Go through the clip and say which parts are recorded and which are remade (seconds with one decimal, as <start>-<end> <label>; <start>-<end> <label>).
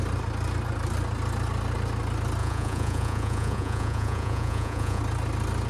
0.0-2.4 recorded; 2.4-5.0 remade; 5.0-5.7 recorded